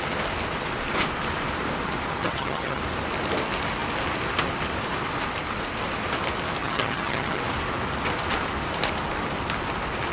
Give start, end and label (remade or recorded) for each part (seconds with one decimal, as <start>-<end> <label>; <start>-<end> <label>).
0.0-2.2 recorded; 2.2-2.8 remade; 2.8-6.6 recorded; 6.6-7.4 remade; 7.4-10.1 recorded